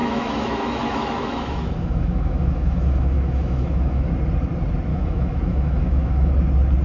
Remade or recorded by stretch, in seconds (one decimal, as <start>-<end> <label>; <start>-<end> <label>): 0.0-4.1 remade; 4.1-4.9 recorded; 4.9-6.3 remade; 6.3-6.8 recorded